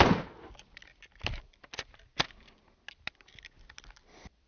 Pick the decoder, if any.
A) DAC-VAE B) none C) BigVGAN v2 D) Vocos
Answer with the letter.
B